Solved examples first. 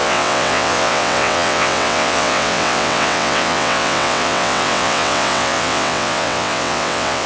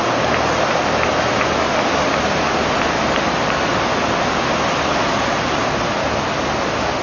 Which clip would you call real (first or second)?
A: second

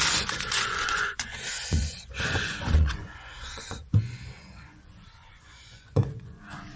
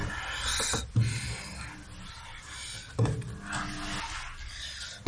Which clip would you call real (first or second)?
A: second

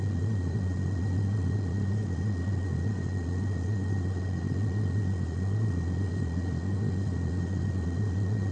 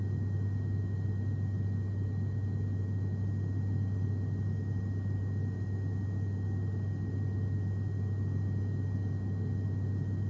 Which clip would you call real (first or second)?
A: second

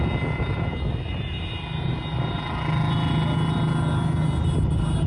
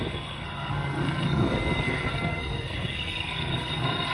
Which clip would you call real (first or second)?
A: first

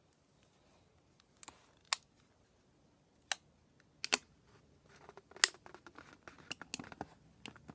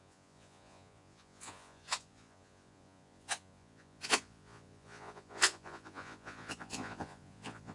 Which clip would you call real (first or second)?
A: first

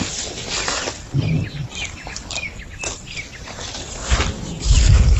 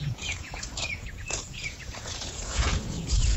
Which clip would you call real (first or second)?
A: first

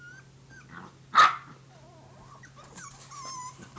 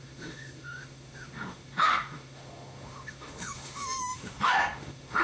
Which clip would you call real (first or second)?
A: first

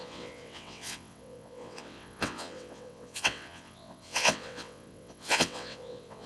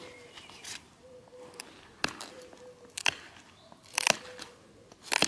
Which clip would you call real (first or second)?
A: second